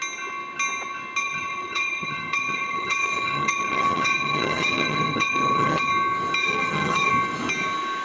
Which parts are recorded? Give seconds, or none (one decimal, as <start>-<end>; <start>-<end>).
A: 0.0-1.2; 5.9-6.4; 7.1-8.0